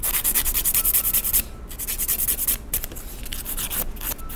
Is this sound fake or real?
real